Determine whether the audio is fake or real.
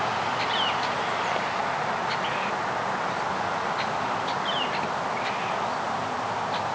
real